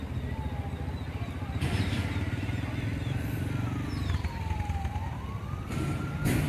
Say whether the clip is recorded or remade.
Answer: remade